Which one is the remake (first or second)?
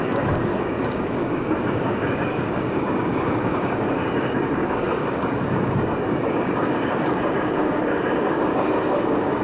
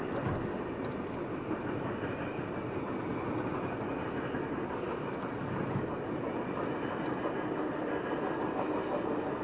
first